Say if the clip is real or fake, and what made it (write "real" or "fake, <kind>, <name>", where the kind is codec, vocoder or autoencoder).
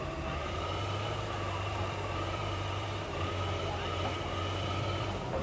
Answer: fake, vocoder, BigVGAN v2